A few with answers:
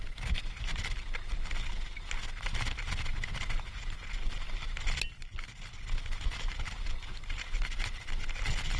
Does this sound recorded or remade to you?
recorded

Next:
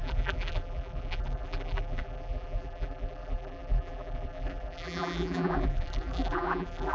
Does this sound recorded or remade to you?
remade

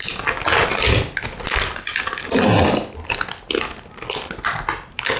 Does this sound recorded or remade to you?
recorded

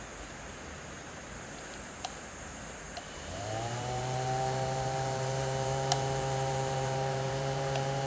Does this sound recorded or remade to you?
remade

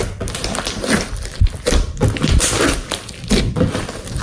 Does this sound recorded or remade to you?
remade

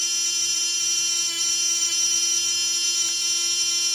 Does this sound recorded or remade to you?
remade